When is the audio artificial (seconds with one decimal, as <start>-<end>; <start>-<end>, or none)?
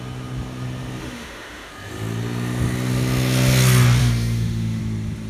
1.0-1.7; 4.0-4.8